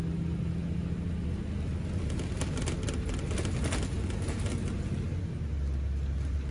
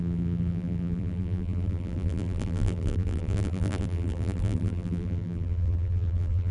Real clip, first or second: first